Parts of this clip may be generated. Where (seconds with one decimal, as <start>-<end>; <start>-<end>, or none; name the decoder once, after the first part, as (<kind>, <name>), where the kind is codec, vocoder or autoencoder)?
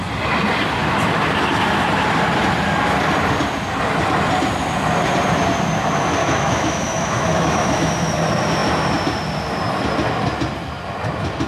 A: 6.2-7.9 (autoencoder, DAC-VAE)